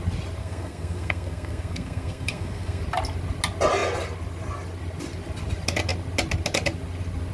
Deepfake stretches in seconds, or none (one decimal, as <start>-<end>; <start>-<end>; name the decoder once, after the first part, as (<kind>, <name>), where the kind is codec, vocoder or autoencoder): 0.4-2.8 (codec, SNAC)